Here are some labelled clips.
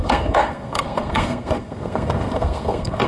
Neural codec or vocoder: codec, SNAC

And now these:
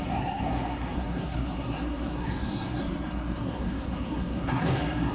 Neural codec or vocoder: codec, SNAC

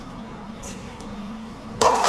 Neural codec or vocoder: codec, SNAC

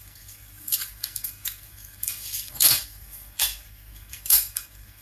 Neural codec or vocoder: codec, SNAC